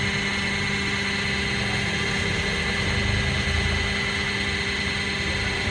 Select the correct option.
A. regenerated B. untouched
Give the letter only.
B